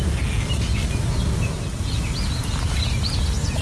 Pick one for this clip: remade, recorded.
recorded